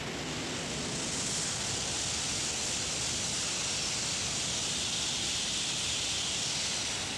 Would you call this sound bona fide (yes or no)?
yes